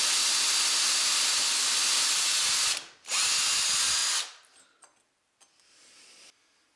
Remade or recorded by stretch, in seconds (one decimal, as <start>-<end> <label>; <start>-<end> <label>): 0.0-6.8 recorded